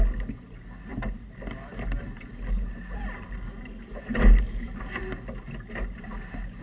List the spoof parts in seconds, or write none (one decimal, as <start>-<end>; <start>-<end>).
none